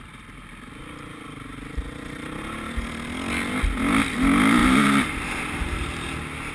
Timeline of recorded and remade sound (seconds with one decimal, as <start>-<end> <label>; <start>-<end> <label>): 0.0-4.6 recorded; 4.6-5.4 remade; 5.4-6.5 recorded